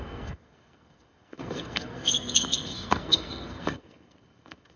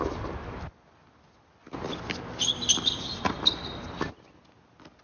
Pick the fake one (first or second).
first